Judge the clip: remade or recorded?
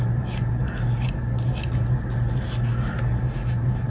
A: recorded